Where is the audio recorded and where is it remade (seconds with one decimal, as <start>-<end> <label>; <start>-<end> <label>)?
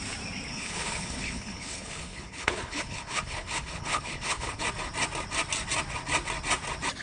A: 0.0-0.5 recorded; 0.5-4.6 remade; 4.6-7.0 recorded